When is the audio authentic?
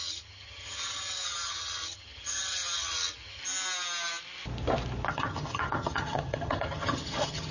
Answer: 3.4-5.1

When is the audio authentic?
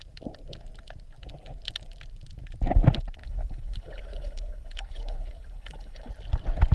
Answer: 0.0-3.2; 6.1-6.7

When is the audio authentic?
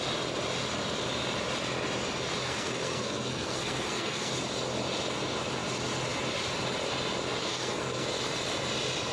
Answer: 0.0-2.4; 4.3-7.4; 8.1-9.1